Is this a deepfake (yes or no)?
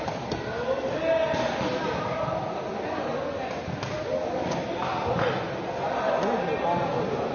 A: no